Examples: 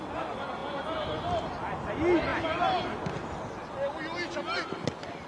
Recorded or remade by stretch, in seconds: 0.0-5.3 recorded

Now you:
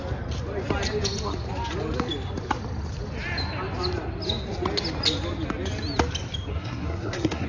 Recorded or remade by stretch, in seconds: 0.0-6.5 recorded; 6.5-7.5 remade

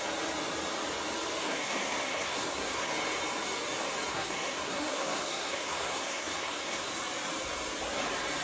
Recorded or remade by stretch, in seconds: 0.0-1.4 recorded; 1.4-2.9 remade; 2.9-4.1 recorded; 4.1-6.9 remade; 6.9-8.4 recorded

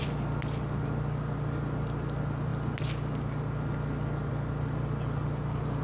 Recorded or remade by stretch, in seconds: 0.0-5.8 recorded

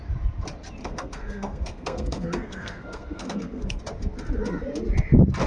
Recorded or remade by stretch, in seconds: 0.0-0.8 recorded; 0.8-3.8 remade; 3.8-5.5 recorded